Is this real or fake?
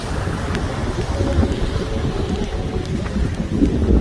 real